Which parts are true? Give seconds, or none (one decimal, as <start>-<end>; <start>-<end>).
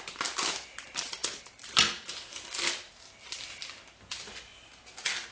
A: 0.0-5.3